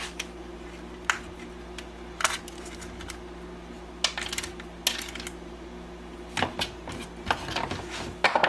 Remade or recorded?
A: recorded